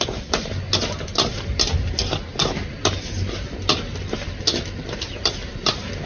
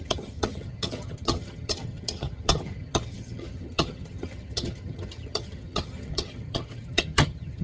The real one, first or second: first